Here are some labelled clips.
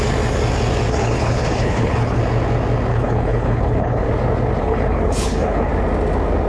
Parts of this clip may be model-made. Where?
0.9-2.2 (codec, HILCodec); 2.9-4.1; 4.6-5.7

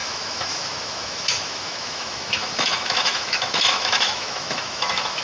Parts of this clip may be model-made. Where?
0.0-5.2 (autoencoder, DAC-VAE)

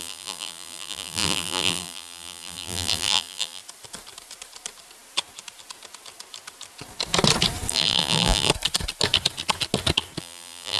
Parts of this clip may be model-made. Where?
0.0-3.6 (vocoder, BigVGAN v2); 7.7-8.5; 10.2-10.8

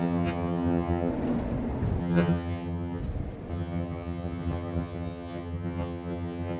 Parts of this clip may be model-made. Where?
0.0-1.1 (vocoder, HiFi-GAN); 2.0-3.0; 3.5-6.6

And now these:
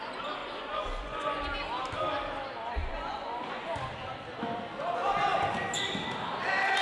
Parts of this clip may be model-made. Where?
0.4-1.4 (vocoder, Vocos); 2.8-3.7

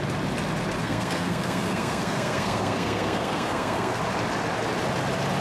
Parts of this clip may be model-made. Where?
0.8-4.0 (codec, SNAC)

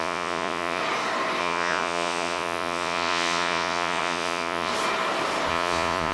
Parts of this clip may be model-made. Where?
0.0-0.8 (vocoder, Vocos); 1.4-4.7; 5.5-6.1